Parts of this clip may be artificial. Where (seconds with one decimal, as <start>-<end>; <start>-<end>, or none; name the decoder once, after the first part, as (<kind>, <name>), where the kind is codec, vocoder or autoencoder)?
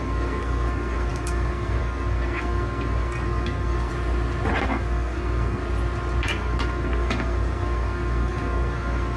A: 0.0-3.9 (codec, SNAC); 4.6-5.6; 6.2-9.2